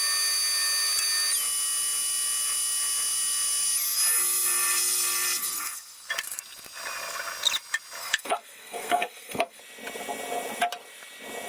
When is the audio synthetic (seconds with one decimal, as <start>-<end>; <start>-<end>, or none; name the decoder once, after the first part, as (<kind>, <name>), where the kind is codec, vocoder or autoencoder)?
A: 5.4-6.1 (codec, SNAC); 8.0-9.6

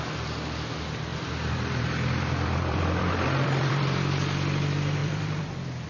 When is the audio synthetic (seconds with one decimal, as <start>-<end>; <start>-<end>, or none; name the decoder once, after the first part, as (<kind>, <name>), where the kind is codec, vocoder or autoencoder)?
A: 1.1-4.0 (vocoder, BigVGAN v2); 5.0-5.5